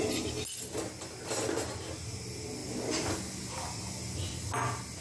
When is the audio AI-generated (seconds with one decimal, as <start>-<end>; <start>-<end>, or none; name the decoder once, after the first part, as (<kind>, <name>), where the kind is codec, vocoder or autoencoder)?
none